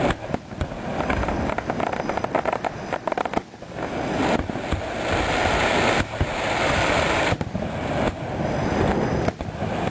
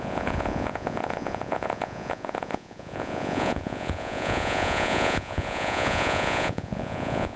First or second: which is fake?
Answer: second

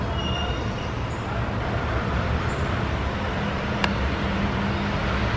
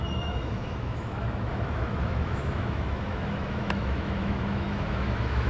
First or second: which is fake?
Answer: second